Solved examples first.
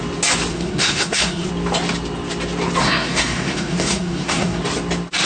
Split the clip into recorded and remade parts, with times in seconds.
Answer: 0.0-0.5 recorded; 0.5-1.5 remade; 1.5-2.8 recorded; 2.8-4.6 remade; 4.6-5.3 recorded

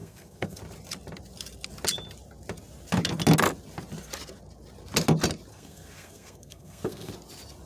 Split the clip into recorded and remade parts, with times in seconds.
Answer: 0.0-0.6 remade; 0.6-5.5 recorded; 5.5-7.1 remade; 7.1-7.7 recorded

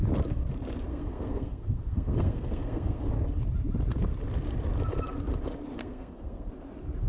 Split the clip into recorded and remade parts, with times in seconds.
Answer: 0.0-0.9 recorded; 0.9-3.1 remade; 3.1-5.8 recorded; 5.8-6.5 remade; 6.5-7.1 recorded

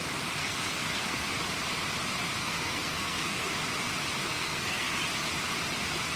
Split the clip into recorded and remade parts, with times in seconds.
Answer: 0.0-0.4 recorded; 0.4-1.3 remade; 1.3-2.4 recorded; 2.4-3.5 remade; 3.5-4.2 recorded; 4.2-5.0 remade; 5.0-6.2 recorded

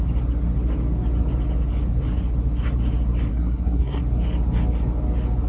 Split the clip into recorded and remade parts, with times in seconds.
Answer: 0.0-3.3 recorded; 3.3-4.0 remade; 4.0-5.5 recorded

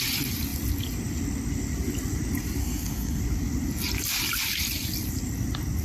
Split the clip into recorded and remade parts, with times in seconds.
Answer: 0.0-2.6 recorded; 2.6-3.2 remade; 3.2-5.8 recorded

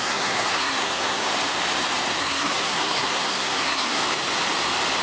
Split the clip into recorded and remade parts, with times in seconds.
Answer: 0.0-1.3 remade; 1.3-2.2 recorded; 2.2-4.0 remade; 4.0-5.0 recorded

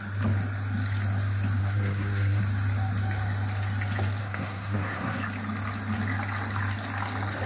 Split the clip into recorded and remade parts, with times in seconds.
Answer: 0.0-1.6 recorded; 1.6-2.4 remade; 2.4-4.2 recorded; 4.2-5.2 remade; 5.2-7.5 recorded